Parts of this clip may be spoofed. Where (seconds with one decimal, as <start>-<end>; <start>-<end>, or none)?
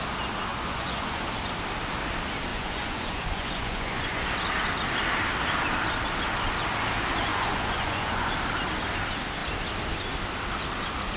0.5-1.3; 2.5-4.3; 7.3-8.3